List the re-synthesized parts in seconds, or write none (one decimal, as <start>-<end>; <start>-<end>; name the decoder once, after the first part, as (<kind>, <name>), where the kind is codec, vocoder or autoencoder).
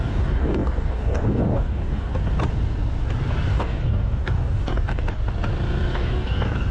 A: 0.0-2.1 (codec, DAC); 3.5-5.2; 5.9-6.7